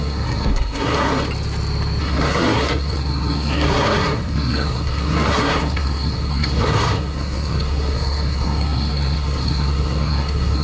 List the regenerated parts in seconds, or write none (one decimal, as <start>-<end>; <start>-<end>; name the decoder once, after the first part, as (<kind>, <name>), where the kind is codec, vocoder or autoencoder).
0.0-1.1 (codec, SNAC); 2.0-10.6